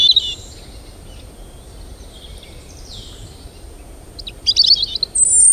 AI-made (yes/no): no